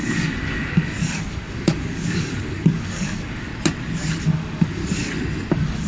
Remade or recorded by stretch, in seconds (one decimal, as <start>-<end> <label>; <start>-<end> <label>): 0.0-3.5 remade; 3.5-4.2 recorded; 4.2-4.8 remade; 4.8-5.5 recorded; 5.5-5.9 remade